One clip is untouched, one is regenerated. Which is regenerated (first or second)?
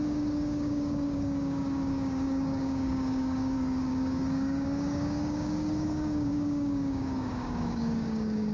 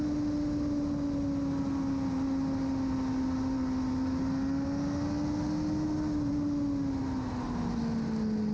first